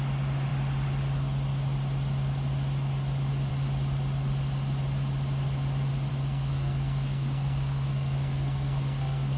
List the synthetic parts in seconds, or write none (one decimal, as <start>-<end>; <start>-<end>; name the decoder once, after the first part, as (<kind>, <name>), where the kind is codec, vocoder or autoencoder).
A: 6.1-9.4 (codec, SNAC)